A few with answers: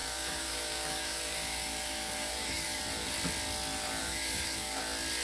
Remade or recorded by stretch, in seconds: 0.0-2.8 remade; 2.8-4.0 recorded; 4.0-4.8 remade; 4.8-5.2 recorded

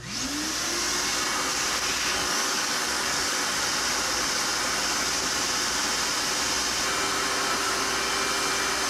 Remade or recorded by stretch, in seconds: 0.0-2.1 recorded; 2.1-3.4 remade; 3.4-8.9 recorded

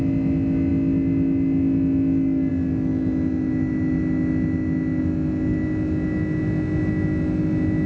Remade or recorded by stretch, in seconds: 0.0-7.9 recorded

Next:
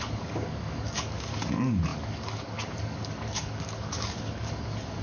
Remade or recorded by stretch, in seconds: 0.0-5.0 remade